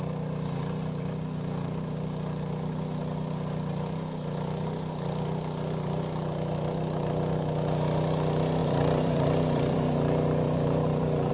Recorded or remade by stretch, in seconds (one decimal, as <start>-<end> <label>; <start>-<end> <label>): 0.0-8.6 recorded; 8.6-11.3 remade